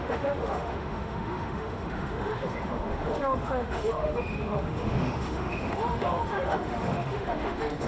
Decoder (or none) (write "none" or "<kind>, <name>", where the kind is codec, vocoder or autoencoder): autoencoder, DAC-VAE